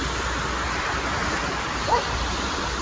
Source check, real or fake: real